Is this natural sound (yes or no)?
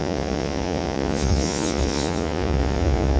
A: no